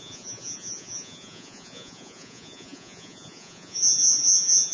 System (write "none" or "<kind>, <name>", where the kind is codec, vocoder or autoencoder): vocoder, Vocos